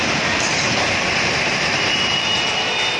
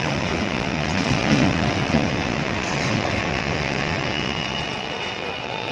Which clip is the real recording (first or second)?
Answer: first